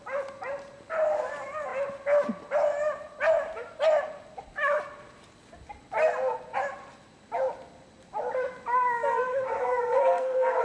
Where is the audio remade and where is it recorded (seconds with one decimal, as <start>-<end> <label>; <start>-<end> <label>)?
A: 0.0-9.3 recorded; 9.3-10.6 remade